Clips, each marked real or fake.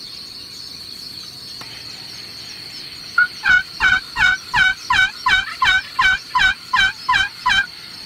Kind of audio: real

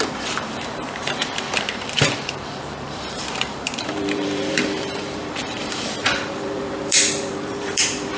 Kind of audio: fake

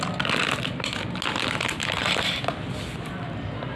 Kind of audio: real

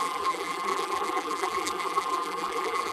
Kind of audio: fake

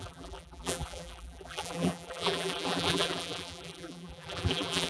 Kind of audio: fake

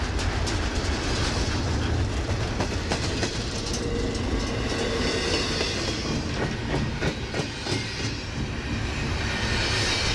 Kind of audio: real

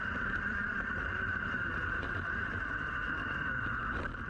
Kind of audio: fake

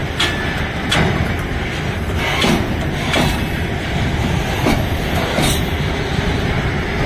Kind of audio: real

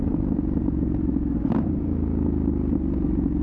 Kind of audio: real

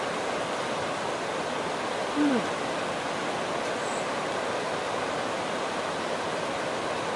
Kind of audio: fake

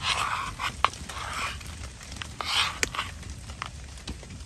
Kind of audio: real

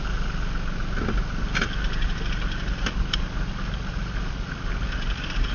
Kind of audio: real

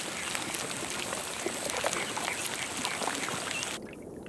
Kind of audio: real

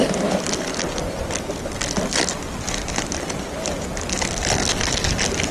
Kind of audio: real